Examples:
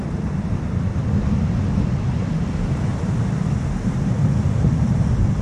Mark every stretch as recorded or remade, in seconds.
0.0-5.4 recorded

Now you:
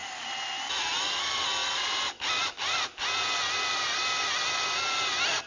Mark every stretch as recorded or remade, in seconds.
0.0-5.5 recorded

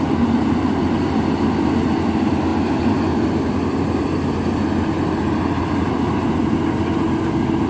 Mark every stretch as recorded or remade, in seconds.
0.0-7.7 recorded

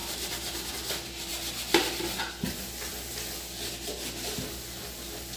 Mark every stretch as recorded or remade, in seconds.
0.0-1.3 recorded; 1.3-2.9 remade; 2.9-5.4 recorded